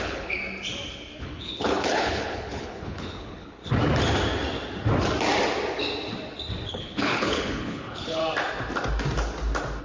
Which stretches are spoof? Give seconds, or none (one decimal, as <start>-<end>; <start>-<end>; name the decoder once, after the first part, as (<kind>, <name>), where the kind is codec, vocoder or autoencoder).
0.0-0.4 (codec, HILCodec); 1.2-3.6; 6.7-8.2

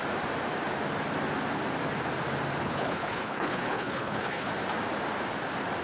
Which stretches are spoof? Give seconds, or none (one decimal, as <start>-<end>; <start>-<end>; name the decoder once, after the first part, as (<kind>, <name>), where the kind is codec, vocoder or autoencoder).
2.6-4.5 (codec, HILCodec)